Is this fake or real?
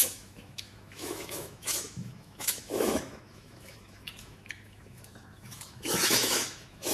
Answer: fake